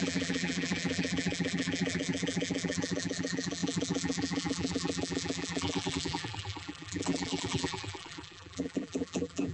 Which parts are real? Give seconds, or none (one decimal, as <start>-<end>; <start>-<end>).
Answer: none